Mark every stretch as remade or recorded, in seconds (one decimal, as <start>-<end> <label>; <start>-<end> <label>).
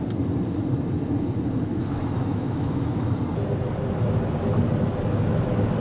0.0-1.7 recorded; 1.7-3.1 remade; 3.1-5.8 recorded